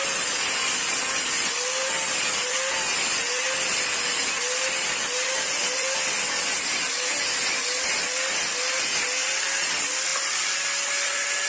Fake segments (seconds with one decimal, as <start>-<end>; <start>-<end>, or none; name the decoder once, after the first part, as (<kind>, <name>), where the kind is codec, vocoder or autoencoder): none